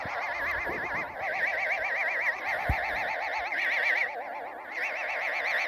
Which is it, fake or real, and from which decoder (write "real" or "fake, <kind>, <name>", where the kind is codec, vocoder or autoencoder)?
real